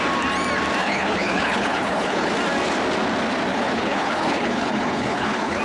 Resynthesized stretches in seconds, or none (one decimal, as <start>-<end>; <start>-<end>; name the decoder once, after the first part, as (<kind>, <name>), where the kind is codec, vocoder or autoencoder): 0.8-2.3 (codec, HILCodec); 3.5-5.6